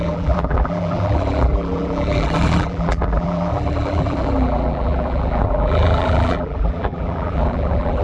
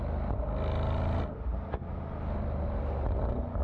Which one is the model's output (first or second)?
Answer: first